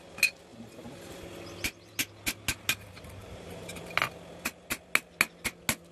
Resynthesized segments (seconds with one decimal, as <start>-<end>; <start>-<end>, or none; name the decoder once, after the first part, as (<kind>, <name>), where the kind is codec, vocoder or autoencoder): 0.5-1.2 (vocoder, BigVGAN v2); 3.2-3.8

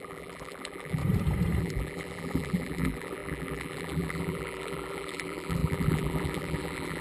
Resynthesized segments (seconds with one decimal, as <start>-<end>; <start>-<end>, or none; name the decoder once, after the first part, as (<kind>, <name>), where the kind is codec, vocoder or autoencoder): 0.0-1.0 (vocoder, BigVGAN v2); 1.6-7.0

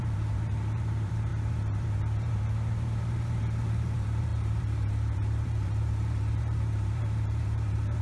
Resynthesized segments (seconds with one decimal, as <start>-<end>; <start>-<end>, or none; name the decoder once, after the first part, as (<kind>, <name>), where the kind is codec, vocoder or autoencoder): 0.0-8.0 (vocoder, BigVGAN v2)

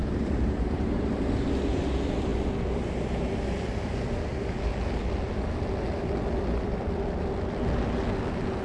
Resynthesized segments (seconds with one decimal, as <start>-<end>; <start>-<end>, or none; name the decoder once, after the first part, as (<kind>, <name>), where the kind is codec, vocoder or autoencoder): 0.0-1.1 (vocoder, BigVGAN v2)

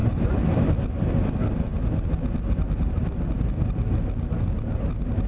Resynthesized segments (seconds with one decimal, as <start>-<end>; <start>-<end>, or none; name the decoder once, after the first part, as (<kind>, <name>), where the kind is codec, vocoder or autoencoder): 0.0-0.6 (vocoder, BigVGAN v2)